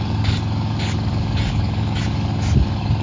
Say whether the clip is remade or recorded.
remade